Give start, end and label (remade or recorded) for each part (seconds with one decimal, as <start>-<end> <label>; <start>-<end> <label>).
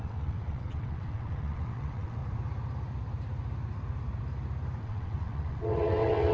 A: 0.0-2.2 remade; 2.2-4.8 recorded; 4.8-6.3 remade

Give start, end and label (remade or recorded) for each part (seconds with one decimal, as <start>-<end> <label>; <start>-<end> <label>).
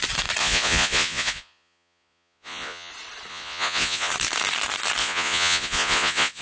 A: 0.0-0.4 recorded; 0.4-2.9 remade; 2.9-3.3 recorded; 3.3-4.1 remade; 4.1-5.0 recorded; 5.0-6.4 remade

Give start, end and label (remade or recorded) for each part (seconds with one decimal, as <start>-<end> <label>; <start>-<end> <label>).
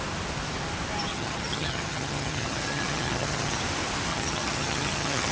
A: 0.0-1.1 recorded; 1.1-3.6 remade; 3.6-4.1 recorded; 4.1-5.3 remade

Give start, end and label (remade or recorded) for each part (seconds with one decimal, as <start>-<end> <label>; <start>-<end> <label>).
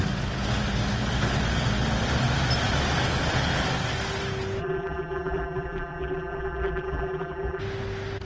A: 0.0-4.6 recorded; 4.6-7.6 remade; 7.6-8.3 recorded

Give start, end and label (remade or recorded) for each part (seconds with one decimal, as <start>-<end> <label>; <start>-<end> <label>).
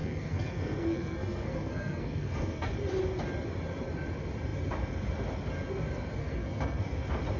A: 0.0-2.7 remade; 2.7-6.2 recorded; 6.2-6.8 remade; 6.8-7.4 recorded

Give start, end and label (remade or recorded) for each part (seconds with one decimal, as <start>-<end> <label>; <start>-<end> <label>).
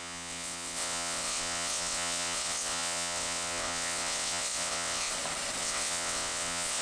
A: 0.0-5.1 remade; 5.1-5.6 recorded; 5.6-6.8 remade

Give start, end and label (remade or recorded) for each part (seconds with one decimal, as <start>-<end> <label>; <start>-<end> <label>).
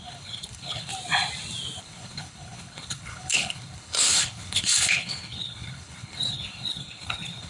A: 0.0-0.9 remade; 0.9-1.8 recorded; 1.8-7.5 remade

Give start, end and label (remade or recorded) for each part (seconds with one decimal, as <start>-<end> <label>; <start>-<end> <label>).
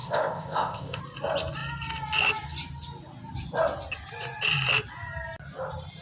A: 0.0-1.0 remade; 1.0-6.0 recorded